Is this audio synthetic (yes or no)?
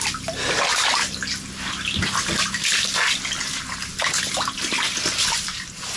no